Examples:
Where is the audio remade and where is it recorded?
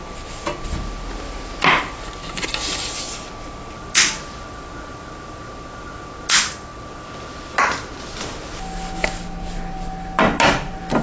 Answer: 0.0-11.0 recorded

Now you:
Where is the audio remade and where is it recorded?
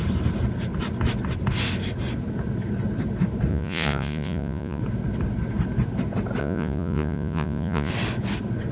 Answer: 0.0-3.5 recorded; 3.5-4.8 remade; 4.8-6.4 recorded; 6.4-7.9 remade; 7.9-8.7 recorded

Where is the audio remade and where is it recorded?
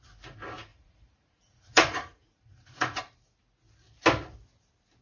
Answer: 0.0-0.7 recorded; 0.7-3.0 remade; 3.0-5.0 recorded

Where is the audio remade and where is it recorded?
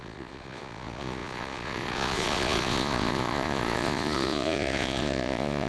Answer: 0.0-5.7 remade